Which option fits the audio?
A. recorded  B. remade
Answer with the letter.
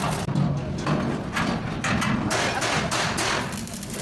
A